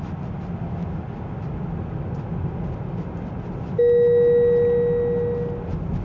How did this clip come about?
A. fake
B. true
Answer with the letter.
B